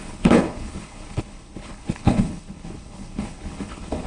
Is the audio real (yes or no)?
no